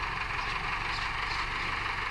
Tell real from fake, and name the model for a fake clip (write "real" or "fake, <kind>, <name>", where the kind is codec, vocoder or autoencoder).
real